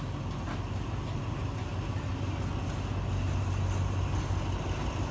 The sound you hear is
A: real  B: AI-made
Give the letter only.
A